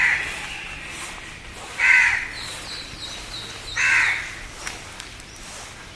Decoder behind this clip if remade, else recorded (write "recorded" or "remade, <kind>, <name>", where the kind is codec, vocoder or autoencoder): recorded